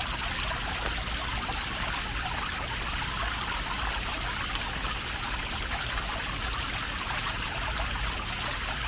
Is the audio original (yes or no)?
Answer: yes